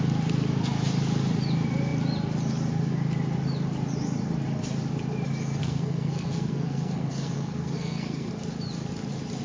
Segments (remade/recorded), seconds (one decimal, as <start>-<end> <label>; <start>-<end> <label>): 0.0-5.6 recorded; 5.6-8.3 remade; 8.3-9.4 recorded